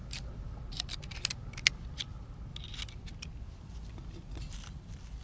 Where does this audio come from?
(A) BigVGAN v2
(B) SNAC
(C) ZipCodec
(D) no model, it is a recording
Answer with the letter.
D